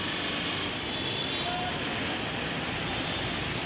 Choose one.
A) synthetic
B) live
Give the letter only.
B